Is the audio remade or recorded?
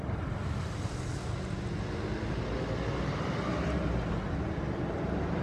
recorded